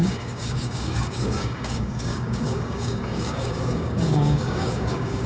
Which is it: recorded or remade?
remade